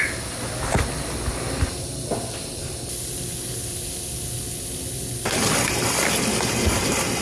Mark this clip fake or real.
real